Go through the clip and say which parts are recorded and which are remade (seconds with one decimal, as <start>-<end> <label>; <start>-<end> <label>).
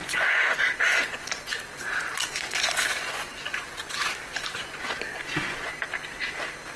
0.0-5.7 remade; 5.7-6.8 recorded